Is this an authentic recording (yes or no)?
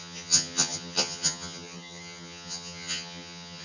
no